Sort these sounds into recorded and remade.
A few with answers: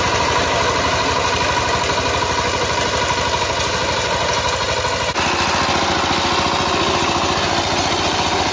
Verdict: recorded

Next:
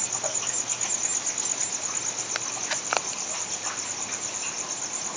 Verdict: recorded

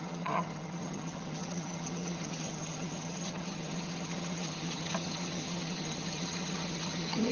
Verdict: remade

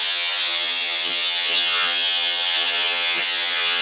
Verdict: remade